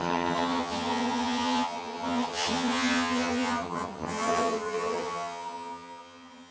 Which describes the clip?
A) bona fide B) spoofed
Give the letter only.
B